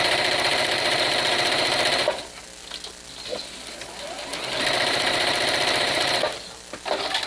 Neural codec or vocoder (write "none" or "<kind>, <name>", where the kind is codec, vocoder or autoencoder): none